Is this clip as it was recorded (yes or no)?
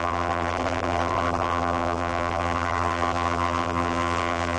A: no